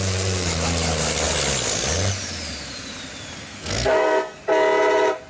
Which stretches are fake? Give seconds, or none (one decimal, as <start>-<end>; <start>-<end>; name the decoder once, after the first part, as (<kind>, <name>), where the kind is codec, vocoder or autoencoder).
3.4-4.4 (codec, SNAC)